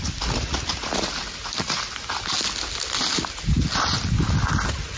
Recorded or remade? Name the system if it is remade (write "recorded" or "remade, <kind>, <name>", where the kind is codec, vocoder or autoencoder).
recorded